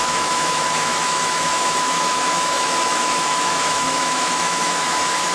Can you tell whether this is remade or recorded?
remade